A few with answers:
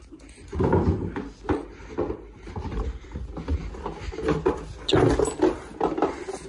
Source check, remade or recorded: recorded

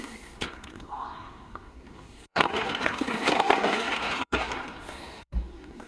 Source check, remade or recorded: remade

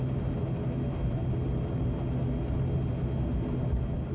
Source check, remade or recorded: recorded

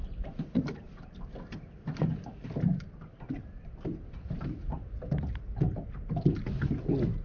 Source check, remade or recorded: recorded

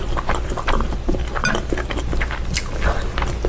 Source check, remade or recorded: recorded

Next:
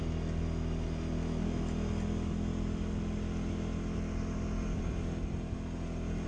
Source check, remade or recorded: recorded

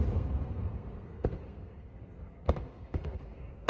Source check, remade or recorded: remade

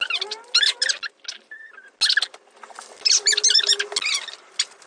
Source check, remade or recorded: recorded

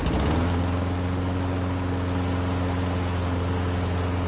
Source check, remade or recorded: recorded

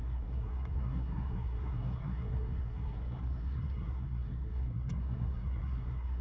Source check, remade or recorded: remade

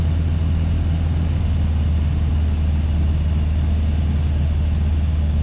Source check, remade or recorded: recorded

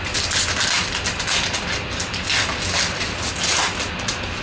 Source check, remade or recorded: recorded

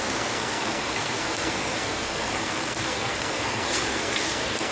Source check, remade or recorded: remade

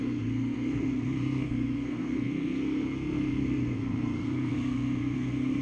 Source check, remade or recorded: remade